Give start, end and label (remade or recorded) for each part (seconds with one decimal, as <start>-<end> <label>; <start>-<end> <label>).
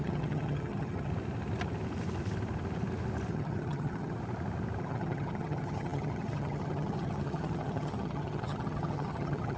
0.0-1.1 remade; 1.1-3.3 recorded; 3.3-4.2 remade; 4.2-4.8 recorded; 4.8-9.6 remade